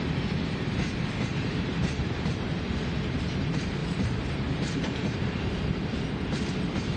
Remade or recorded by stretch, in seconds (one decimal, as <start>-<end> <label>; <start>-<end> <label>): 0.0-1.3 recorded; 1.3-2.8 remade; 2.8-3.8 recorded; 3.8-5.5 remade; 5.5-7.0 recorded